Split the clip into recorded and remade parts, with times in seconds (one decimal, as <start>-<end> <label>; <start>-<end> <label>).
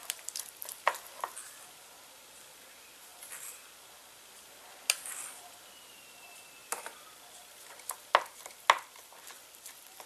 0.0-10.1 recorded